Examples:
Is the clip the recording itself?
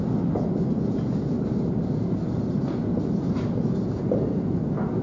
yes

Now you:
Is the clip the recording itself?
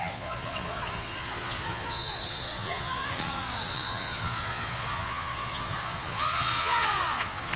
no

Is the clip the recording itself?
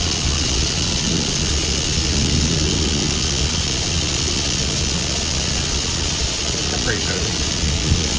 no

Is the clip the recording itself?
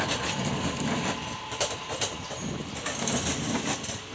yes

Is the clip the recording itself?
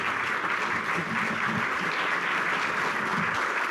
yes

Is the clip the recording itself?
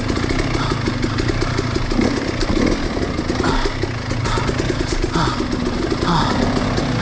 yes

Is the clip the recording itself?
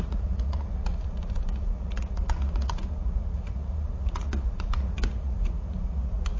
no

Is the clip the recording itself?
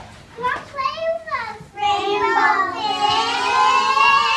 yes